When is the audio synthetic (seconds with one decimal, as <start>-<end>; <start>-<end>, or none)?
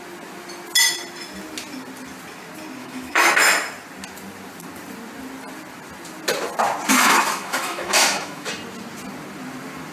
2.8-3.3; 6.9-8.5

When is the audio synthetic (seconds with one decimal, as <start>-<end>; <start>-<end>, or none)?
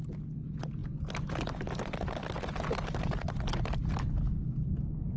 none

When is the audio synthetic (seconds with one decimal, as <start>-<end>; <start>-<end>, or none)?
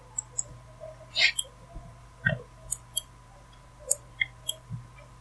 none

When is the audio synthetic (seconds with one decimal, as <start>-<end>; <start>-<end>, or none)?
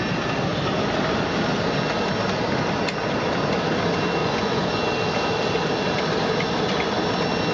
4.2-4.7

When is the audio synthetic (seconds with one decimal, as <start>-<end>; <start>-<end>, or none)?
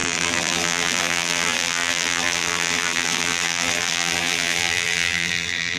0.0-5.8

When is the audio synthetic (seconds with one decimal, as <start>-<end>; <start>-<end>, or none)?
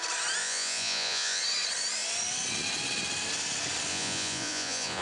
0.4-1.4; 3.9-5.0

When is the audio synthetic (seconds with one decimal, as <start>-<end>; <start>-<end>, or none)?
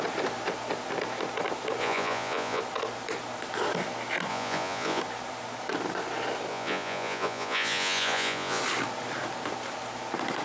1.8-2.6; 4.3-5.0; 6.5-8.6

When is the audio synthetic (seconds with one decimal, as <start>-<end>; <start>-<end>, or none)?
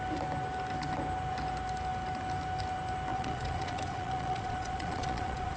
3.1-5.6